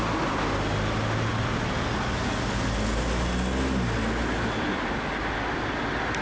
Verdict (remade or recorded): recorded